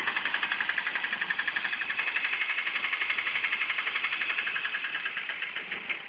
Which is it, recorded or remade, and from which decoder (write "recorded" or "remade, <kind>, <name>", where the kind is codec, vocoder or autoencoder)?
recorded